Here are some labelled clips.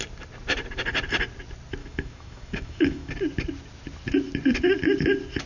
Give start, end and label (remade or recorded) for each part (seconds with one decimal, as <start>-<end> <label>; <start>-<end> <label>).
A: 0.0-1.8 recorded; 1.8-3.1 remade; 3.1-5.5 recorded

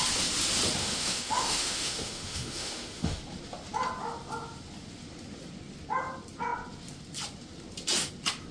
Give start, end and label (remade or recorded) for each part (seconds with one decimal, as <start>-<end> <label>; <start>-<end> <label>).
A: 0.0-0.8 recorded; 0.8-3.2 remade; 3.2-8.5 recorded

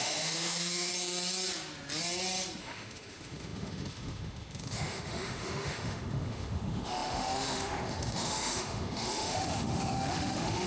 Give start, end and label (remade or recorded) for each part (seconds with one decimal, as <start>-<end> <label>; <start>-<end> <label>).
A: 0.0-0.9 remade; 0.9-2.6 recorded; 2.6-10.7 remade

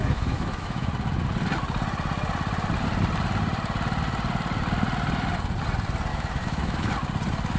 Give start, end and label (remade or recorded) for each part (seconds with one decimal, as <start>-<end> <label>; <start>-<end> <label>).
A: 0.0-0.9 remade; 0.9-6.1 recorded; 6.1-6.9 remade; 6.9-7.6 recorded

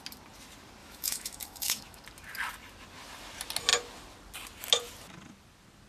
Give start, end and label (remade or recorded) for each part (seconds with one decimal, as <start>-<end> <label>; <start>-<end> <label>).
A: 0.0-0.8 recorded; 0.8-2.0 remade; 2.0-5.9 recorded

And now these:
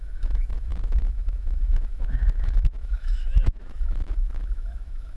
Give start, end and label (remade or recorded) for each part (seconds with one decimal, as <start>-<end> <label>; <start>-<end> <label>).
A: 0.0-5.2 remade